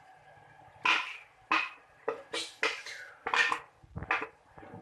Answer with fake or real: real